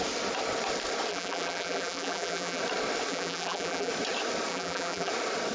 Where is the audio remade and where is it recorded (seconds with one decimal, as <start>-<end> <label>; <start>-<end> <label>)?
0.0-1.1 recorded; 1.1-2.6 remade; 2.6-3.1 recorded; 3.1-3.9 remade; 3.9-4.5 recorded; 4.5-5.1 remade; 5.1-5.5 recorded